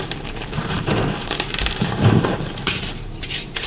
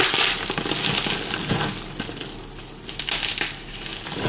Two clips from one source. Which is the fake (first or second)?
first